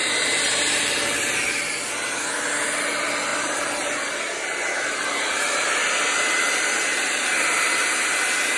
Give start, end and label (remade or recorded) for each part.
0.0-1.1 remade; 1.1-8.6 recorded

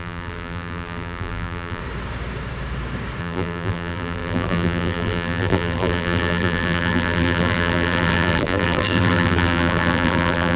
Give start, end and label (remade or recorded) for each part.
0.0-1.8 remade; 1.8-3.2 recorded; 3.2-10.6 remade

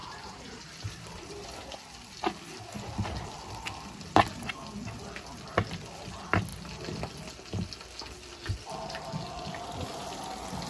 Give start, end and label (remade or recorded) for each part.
0.0-1.8 remade; 1.8-10.7 recorded

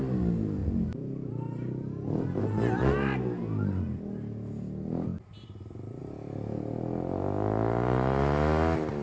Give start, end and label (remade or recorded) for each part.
0.0-5.1 recorded; 5.1-6.0 remade; 6.0-9.0 recorded

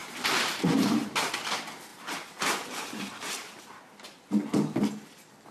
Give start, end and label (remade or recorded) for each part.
0.0-1.3 remade; 1.3-1.9 recorded; 1.9-3.6 remade; 3.6-5.5 recorded